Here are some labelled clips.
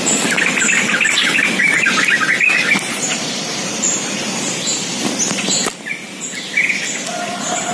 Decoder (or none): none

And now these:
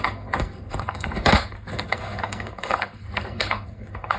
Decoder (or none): codec, SNAC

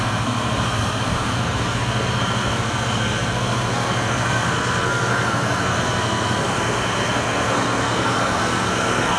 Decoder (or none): codec, SNAC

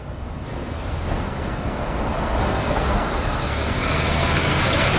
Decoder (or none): codec, SNAC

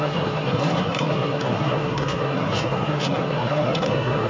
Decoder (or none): codec, SNAC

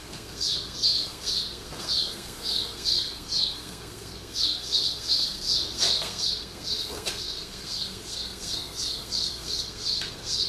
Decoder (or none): codec, SNAC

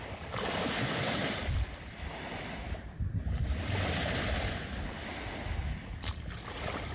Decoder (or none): none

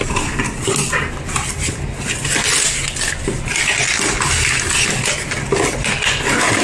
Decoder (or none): none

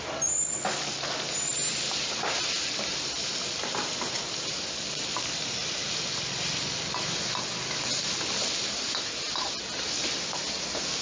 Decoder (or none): none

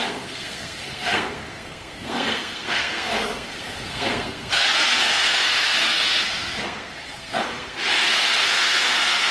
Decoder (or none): codec, SNAC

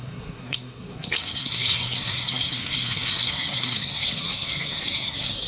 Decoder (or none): codec, SNAC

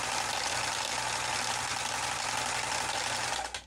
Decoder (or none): none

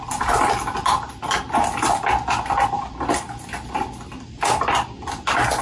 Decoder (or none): none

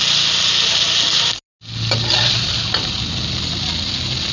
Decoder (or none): none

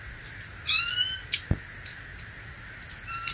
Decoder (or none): none